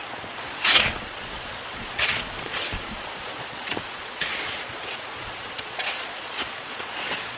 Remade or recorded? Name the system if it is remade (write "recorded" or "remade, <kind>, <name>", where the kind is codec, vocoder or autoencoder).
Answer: remade, vocoder, Vocos